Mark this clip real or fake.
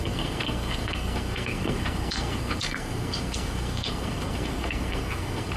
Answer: fake